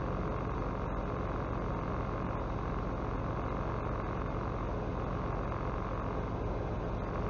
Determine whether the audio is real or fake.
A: real